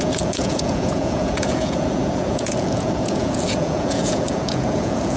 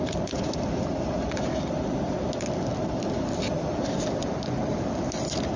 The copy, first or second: first